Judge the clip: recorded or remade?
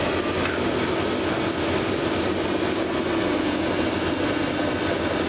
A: recorded